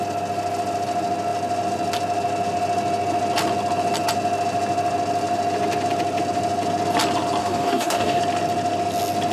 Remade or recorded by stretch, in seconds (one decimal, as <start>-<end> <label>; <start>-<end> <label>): 0.0-7.4 recorded; 7.4-8.2 remade; 8.2-9.3 recorded